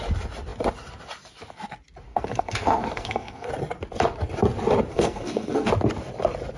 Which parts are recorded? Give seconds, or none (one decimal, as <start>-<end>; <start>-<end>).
0.0-2.1; 3.5-4.9; 5.7-6.6